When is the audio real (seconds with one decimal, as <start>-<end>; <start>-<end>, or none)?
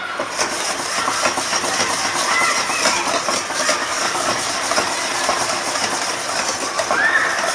0.0-3.8; 4.3-7.5